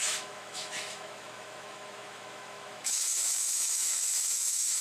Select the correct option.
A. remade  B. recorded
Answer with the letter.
A